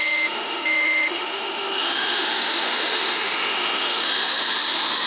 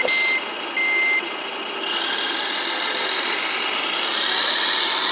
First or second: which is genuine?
second